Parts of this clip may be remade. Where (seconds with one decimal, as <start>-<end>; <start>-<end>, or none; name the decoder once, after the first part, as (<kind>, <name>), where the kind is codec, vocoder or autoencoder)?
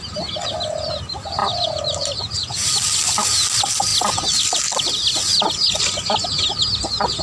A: 1.4-2.9 (vocoder, BigVGAN v2)